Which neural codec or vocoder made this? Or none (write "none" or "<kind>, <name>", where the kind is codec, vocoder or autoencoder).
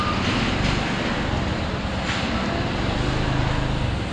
none